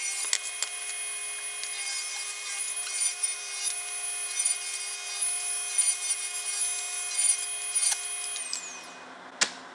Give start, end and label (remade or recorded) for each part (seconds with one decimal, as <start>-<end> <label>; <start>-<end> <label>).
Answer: 0.0-9.7 recorded